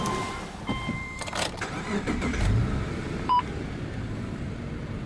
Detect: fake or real fake